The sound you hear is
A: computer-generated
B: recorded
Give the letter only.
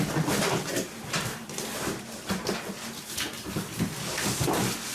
B